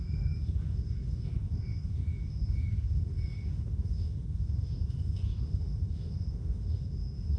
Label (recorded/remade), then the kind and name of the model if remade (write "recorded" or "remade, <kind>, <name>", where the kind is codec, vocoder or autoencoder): remade, autoencoder, DAC-VAE